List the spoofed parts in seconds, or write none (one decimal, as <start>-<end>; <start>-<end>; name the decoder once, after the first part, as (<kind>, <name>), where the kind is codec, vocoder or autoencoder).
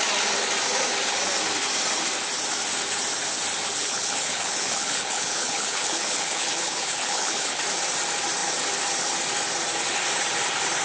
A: 3.8-7.6 (codec, HILCodec)